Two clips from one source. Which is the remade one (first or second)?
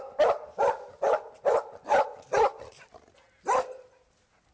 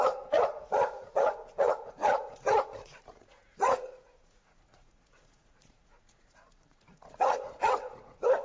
second